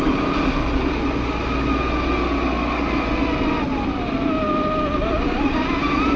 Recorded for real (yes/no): yes